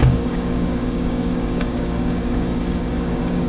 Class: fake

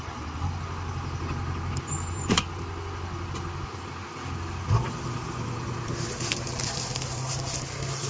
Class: real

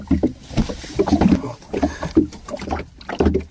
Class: real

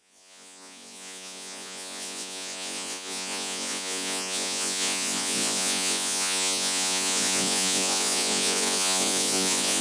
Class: fake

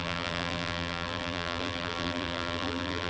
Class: fake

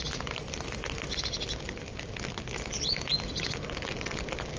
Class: real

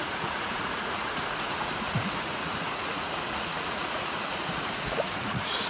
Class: fake